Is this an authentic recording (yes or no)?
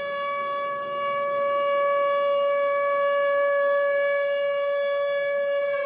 yes